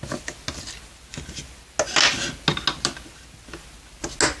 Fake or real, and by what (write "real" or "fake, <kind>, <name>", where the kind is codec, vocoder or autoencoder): real